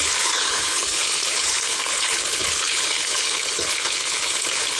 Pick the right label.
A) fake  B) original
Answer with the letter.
A